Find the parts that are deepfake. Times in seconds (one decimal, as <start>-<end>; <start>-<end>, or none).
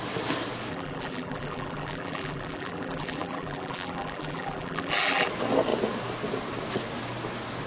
0.7-5.3